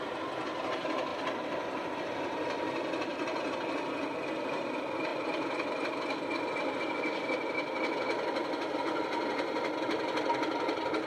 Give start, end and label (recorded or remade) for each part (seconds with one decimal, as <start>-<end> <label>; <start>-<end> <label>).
0.0-3.1 remade; 3.1-3.6 recorded; 3.6-11.1 remade